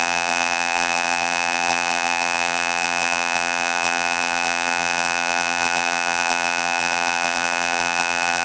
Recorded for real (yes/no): no